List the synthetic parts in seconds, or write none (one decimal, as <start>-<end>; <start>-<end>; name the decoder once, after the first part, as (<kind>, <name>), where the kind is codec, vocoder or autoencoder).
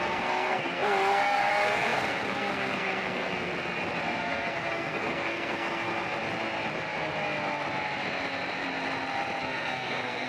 0.0-3.5 (codec, SNAC); 4.2-5.9; 9.4-10.3